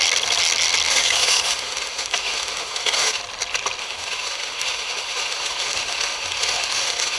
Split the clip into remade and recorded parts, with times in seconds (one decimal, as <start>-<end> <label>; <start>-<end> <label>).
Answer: 0.0-0.9 recorded; 0.9-3.2 remade; 3.2-3.8 recorded; 3.8-7.2 remade